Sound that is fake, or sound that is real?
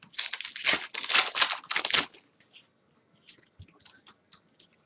real